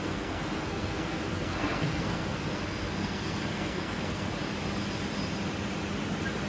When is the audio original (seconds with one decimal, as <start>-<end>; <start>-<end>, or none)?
4.3-6.5